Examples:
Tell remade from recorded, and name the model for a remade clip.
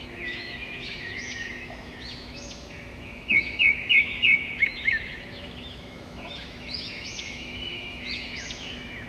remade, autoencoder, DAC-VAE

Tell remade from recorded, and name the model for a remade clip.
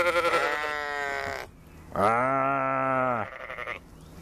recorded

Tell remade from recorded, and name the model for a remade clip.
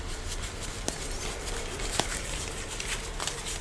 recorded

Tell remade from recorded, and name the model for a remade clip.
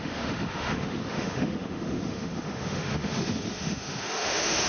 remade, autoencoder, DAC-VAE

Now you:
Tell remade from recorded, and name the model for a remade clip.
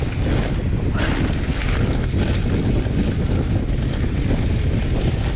recorded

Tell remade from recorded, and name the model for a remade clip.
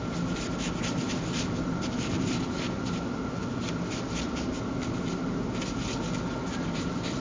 recorded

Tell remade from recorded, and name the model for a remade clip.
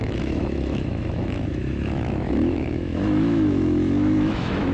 remade, autoencoder, DAC-VAE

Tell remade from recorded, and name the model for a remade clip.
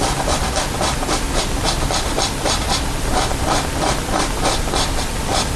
recorded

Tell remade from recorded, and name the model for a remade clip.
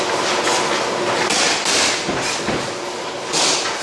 recorded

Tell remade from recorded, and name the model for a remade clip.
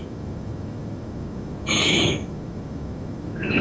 remade, autoencoder, DAC-VAE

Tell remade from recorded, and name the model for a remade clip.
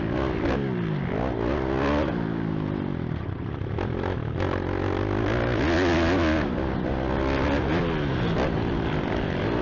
recorded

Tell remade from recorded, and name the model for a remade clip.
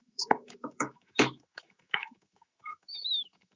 remade, autoencoder, DAC-VAE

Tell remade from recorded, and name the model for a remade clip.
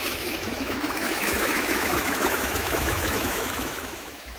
remade, autoencoder, DAC-VAE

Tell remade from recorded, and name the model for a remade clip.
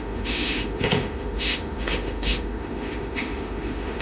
remade, autoencoder, DAC-VAE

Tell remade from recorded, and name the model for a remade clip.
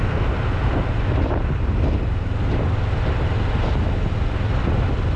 recorded